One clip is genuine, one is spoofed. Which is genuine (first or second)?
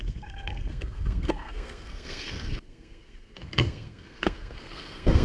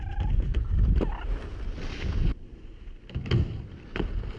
second